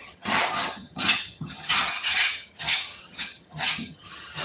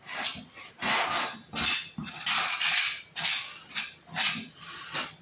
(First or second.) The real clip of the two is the second